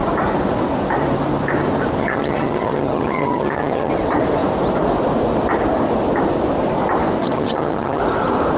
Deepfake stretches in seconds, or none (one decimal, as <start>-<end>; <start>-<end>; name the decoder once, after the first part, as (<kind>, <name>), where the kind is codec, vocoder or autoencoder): 2.0-3.9 (vocoder, HiFi-GAN); 7.2-8.0